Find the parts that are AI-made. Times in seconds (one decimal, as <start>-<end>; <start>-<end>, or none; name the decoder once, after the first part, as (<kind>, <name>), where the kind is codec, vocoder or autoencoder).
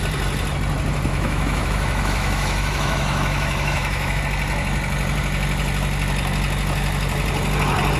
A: 1.1-4.2 (autoencoder, DAC-VAE)